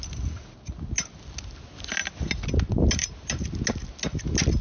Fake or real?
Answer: real